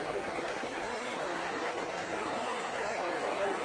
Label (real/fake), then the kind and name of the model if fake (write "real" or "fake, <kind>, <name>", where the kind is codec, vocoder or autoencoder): fake, codec, SNAC